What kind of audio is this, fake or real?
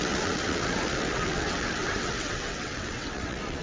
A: fake